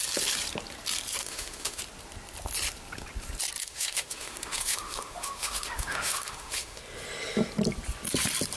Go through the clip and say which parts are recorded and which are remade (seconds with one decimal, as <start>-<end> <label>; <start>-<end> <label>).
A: 0.0-1.2 recorded; 1.2-1.8 remade; 1.8-3.6 recorded; 3.6-6.8 remade; 6.8-8.6 recorded